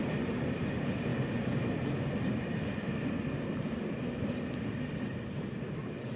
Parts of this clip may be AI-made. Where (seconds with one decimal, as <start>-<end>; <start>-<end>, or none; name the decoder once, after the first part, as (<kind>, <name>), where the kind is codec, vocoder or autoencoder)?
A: none